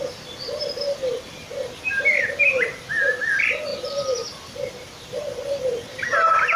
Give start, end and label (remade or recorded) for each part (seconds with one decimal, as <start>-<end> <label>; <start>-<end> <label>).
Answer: 0.0-6.6 remade